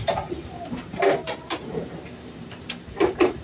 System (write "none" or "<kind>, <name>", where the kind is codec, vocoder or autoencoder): vocoder, BigVGAN v2